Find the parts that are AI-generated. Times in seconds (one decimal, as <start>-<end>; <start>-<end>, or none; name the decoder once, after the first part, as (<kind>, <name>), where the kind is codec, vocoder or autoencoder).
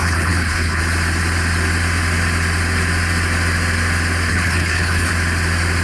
0.0-0.8 (codec, HILCodec); 4.3-5.1